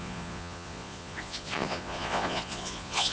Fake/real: fake